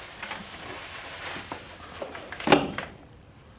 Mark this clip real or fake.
real